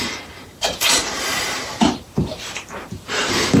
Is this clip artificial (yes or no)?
yes